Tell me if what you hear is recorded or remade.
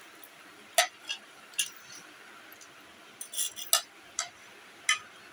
recorded